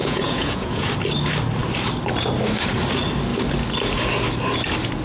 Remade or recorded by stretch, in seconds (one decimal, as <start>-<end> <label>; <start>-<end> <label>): 0.0-0.9 remade; 0.9-5.0 recorded